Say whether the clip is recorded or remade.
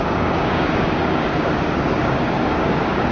remade